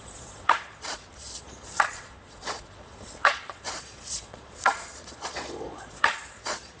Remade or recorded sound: remade